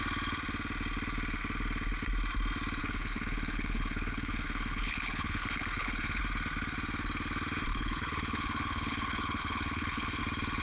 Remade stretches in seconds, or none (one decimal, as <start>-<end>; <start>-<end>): 2.8-6.2; 7.7-10.2